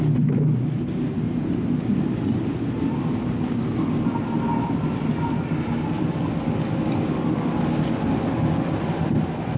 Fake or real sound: real